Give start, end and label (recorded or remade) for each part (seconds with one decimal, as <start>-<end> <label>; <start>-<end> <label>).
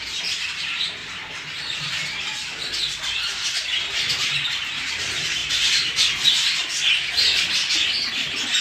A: 0.0-1.0 recorded; 1.0-1.9 remade; 1.9-8.6 recorded